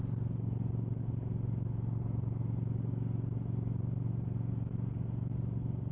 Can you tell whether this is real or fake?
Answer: real